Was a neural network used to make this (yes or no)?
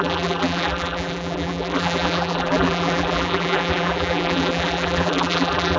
yes